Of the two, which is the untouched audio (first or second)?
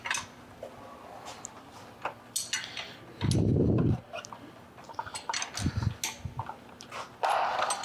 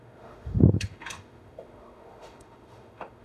first